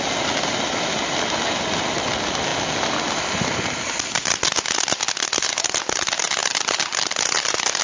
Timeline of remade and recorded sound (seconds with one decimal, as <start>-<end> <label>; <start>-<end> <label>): 0.0-7.8 recorded